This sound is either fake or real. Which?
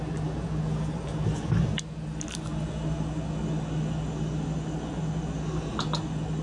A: real